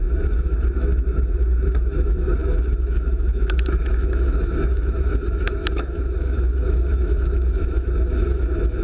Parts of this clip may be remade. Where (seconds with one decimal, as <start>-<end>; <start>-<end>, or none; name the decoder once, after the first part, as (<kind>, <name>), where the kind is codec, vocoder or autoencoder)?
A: 0.0-8.8 (autoencoder, DAC-VAE)